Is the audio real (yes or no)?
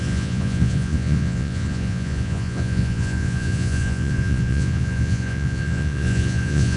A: no